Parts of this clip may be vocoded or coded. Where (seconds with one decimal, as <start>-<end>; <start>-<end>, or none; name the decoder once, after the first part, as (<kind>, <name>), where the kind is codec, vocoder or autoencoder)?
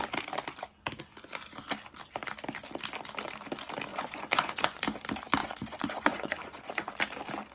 3.9-4.8 (vocoder, Vocos); 5.4-6.9